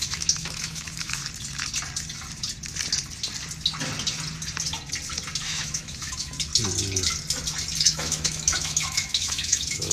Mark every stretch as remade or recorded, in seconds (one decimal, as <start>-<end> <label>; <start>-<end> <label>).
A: 0.0-1.2 remade; 1.2-5.4 recorded; 5.4-6.5 remade; 6.5-7.8 recorded; 7.8-9.9 remade